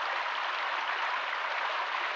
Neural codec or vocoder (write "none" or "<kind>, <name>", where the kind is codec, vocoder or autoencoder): none